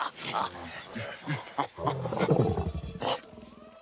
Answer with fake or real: real